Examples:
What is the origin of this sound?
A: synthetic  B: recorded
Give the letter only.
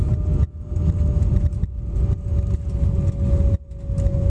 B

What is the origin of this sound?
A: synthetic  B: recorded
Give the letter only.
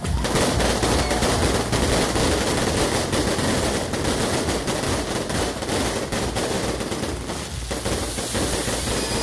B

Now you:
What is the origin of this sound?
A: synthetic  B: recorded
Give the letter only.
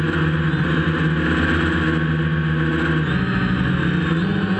B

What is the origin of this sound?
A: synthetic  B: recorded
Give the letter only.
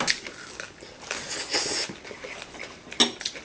B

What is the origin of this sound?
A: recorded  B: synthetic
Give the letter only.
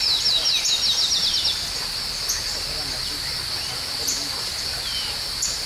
A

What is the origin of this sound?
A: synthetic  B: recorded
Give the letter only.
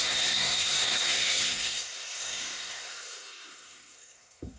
A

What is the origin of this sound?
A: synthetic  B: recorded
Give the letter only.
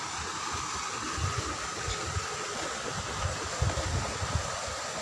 B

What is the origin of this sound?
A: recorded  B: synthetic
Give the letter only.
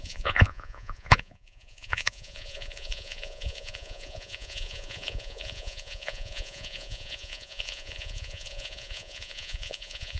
B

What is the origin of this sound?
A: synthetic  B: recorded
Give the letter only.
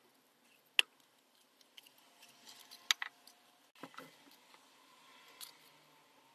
B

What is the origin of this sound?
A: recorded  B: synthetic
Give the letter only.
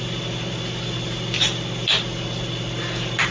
A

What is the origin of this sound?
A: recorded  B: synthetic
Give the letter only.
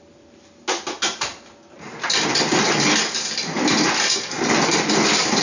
A